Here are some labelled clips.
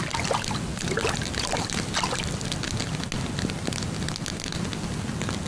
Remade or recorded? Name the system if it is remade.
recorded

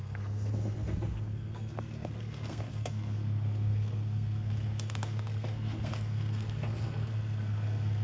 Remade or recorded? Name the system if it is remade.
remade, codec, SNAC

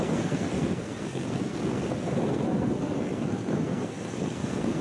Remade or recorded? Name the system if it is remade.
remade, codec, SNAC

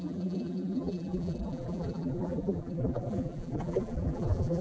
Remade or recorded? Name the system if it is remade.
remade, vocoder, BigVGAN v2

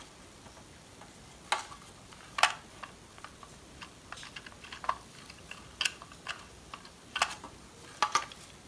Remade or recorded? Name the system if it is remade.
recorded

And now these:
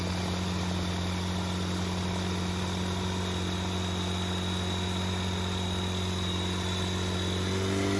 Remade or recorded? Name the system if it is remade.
recorded